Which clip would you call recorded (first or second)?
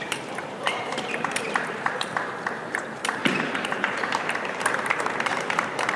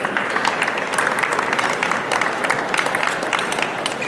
second